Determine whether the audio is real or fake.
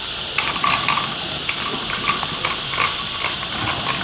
real